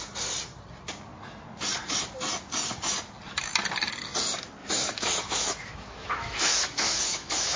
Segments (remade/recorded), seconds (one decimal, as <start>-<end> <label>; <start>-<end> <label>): 0.0-4.6 recorded; 4.6-7.6 remade